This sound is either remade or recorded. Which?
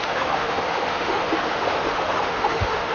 remade